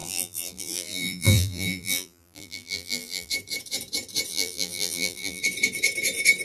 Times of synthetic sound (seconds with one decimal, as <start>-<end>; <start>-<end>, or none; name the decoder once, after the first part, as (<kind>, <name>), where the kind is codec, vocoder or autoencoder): 0.0-3.3 (vocoder, BigVGAN v2); 4.3-5.4